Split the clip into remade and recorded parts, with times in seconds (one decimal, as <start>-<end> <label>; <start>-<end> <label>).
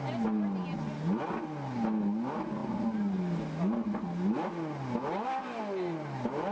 0.0-6.5 recorded